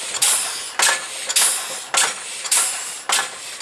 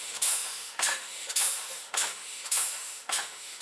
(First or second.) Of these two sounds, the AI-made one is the second